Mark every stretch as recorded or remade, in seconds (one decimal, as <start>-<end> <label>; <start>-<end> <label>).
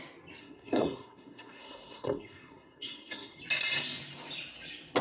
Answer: 0.0-0.4 recorded; 0.4-3.4 remade; 3.4-5.0 recorded